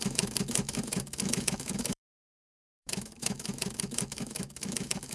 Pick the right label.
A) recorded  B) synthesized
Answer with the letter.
B